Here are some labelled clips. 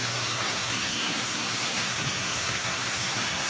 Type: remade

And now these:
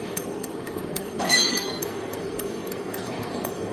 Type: remade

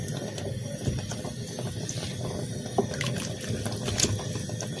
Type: recorded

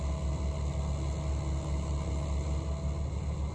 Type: recorded